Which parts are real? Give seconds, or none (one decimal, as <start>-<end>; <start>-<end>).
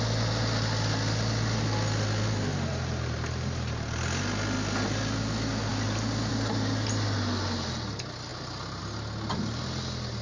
0.0-10.2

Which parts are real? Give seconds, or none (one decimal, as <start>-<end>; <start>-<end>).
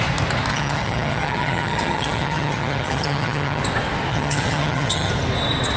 0.0-0.5; 3.6-4.1; 5.1-5.8